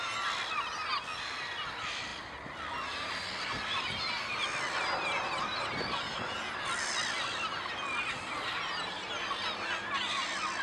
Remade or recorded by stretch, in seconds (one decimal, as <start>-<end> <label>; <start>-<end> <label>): 0.0-10.6 recorded